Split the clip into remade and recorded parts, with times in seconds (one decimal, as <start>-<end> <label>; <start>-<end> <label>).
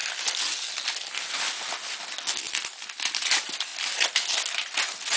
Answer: 0.0-3.1 recorded; 3.1-3.7 remade; 3.7-4.5 recorded; 4.5-5.2 remade